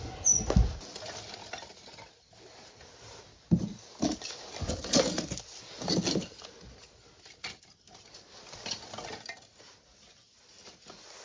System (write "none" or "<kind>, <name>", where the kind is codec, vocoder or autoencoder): none